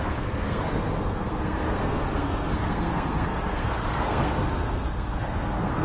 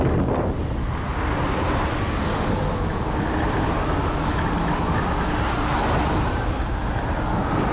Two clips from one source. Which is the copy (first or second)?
first